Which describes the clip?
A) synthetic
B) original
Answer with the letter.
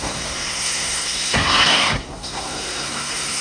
A